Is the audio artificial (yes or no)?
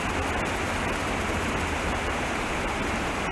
no